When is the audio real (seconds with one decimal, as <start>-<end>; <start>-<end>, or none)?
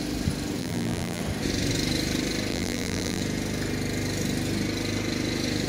0.0-0.6; 1.2-2.5; 3.2-5.7